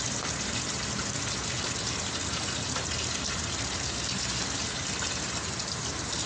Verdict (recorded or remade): recorded